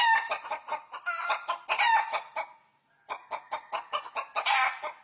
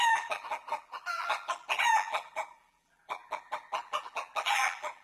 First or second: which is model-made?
second